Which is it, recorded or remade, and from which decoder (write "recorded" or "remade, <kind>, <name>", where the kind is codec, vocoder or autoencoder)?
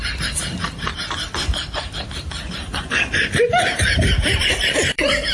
remade, vocoder, BigVGAN v2